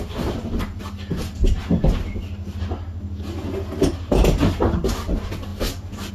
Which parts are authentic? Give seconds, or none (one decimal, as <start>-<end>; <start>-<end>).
0.0-6.1